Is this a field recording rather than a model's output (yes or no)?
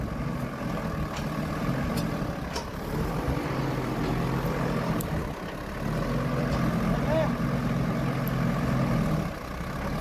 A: yes